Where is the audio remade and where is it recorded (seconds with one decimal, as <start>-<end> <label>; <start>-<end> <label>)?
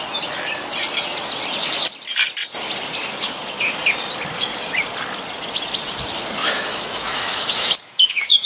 0.0-6.4 recorded; 6.4-8.5 remade